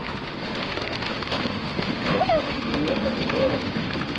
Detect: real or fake fake